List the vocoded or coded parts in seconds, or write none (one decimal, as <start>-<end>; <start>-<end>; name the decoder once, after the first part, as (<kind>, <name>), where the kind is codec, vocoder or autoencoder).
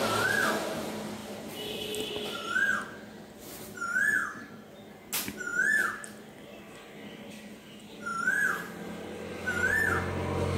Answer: 1.2-2.1 (vocoder, BigVGAN v2); 4.2-4.7; 8.1-8.8